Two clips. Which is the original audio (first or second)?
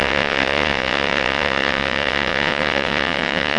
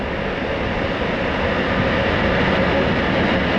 second